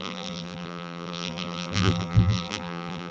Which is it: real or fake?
fake